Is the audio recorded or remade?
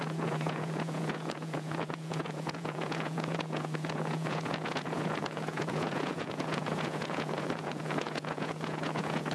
remade